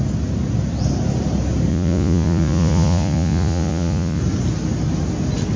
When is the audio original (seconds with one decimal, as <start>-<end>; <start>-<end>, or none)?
0.0-1.7; 4.2-5.6